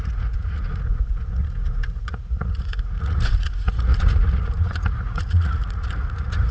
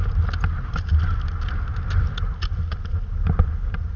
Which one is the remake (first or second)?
first